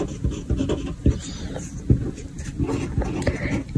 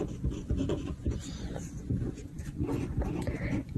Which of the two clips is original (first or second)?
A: first